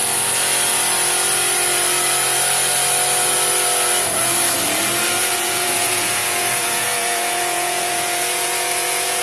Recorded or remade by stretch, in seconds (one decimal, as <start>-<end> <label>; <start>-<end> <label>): 0.0-5.2 recorded; 5.2-9.2 remade